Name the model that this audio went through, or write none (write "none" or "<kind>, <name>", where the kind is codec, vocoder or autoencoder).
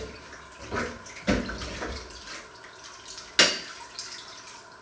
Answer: none